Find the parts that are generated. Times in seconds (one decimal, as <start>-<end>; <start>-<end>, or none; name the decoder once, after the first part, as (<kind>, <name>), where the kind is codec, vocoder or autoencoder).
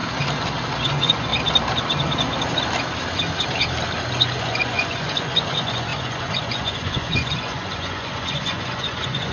0.9-1.3 (vocoder, Vocos); 4.4-9.3